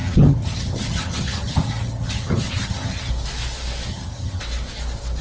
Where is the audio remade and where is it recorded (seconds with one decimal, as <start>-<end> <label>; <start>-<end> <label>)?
0.0-3.1 remade; 3.1-3.9 recorded; 3.9-4.4 remade; 4.4-5.2 recorded